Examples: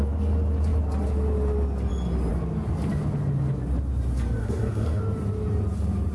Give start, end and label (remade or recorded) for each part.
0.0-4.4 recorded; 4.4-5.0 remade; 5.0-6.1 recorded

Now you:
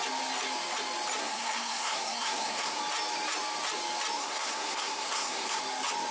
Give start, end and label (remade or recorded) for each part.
0.0-1.2 recorded; 1.2-2.8 remade; 2.8-4.2 recorded; 4.2-5.6 remade; 5.6-6.1 recorded

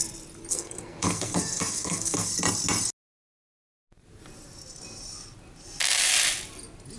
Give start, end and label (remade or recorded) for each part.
0.0-0.5 recorded; 0.5-2.3 remade; 2.3-7.0 recorded

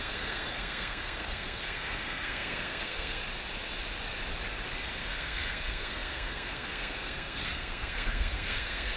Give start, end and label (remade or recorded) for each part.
0.0-3.2 remade; 3.2-5.0 recorded; 5.0-9.0 remade

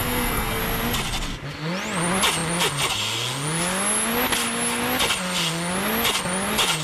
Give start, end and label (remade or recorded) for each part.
0.0-0.6 remade; 0.6-6.8 recorded

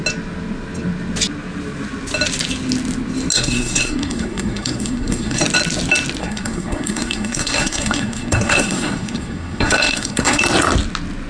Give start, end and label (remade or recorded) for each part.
0.0-3.3 recorded; 3.3-5.4 remade; 5.4-6.2 recorded; 6.2-10.4 remade; 10.4-11.3 recorded

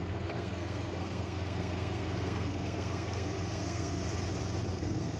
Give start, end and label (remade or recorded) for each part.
0.0-4.0 remade; 4.0-4.7 recorded; 4.7-5.2 remade